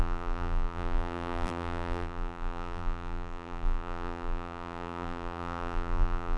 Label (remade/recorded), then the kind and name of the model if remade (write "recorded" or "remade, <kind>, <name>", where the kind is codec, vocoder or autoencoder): remade, vocoder, BigVGAN v2